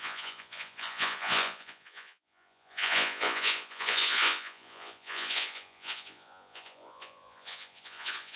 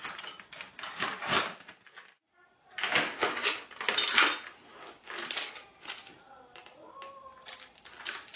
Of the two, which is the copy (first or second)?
first